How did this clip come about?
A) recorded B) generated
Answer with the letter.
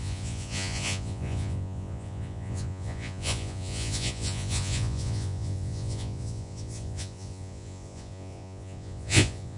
B